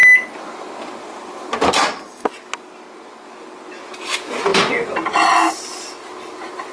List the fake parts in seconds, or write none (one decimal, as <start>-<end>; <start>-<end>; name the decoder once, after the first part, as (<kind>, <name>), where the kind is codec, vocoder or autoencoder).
none